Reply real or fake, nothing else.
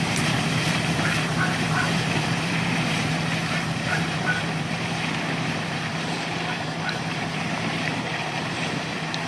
fake